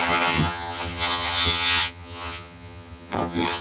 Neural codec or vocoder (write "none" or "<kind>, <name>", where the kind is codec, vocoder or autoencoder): vocoder, HiFi-GAN